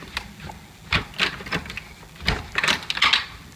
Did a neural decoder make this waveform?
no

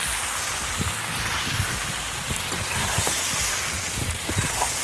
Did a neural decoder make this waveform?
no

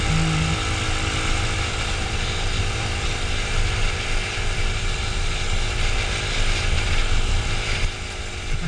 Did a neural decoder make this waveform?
no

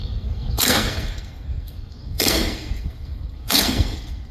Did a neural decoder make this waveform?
yes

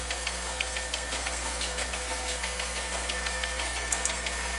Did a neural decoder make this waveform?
yes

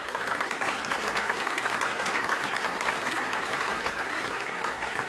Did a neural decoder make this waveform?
yes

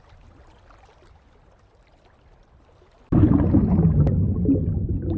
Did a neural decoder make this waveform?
no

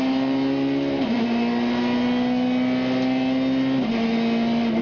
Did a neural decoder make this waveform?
no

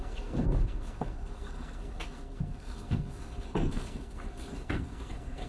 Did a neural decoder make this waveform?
yes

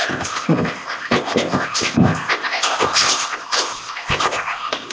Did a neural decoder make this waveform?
yes